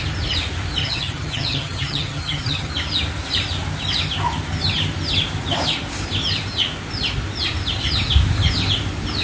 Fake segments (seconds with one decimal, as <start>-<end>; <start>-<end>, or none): 0.8-2.7